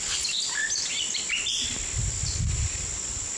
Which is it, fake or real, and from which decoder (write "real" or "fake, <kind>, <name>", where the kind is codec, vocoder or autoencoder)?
real